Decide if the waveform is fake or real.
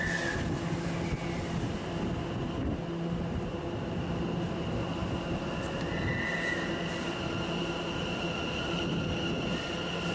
real